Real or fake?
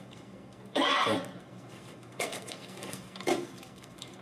fake